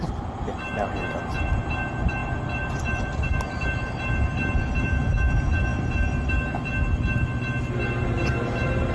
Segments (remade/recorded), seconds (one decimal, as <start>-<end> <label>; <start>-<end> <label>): 0.0-8.9 recorded